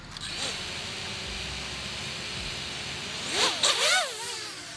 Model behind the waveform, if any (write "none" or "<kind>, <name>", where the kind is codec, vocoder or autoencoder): none